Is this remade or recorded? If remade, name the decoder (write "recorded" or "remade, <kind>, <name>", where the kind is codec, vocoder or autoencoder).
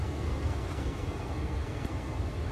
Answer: remade, codec, SNAC